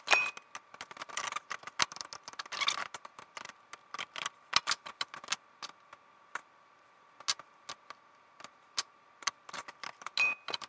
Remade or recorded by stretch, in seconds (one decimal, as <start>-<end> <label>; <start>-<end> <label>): 0.0-10.7 recorded